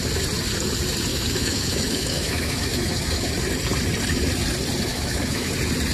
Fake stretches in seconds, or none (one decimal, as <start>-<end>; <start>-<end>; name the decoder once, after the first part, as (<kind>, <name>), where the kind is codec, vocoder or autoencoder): 1.1-3.3 (autoencoder, DAC-VAE); 4.9-5.5